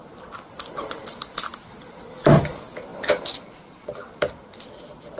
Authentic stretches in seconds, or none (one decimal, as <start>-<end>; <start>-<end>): 0.0-5.2